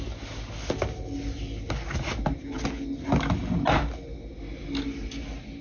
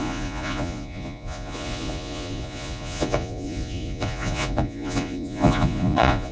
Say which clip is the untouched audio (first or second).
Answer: first